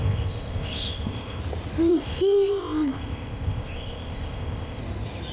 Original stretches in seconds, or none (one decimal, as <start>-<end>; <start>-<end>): 1.4-1.9; 4.8-5.3